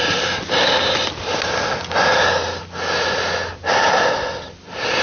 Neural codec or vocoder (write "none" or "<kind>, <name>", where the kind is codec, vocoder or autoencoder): none